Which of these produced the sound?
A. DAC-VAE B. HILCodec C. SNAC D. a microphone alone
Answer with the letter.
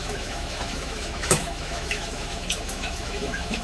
A